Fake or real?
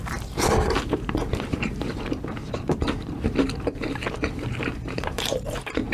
fake